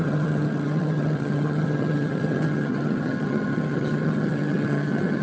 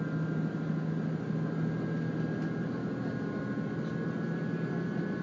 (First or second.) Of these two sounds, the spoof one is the first